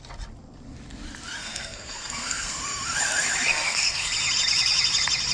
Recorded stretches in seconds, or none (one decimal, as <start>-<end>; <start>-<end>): 0.0-1.4; 2.6-3.5; 4.1-5.3